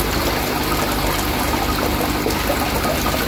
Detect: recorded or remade recorded